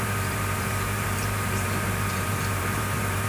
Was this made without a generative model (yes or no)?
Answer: no